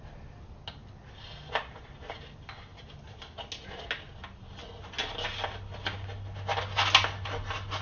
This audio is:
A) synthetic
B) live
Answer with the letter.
B